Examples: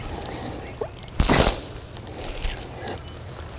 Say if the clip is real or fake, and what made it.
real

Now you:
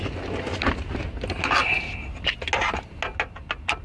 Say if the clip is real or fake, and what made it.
real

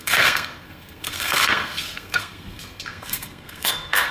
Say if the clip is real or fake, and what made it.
fake, codec, SNAC